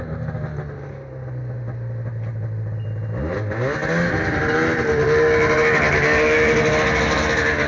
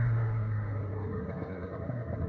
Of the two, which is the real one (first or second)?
first